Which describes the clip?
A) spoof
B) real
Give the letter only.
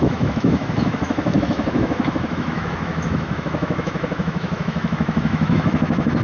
A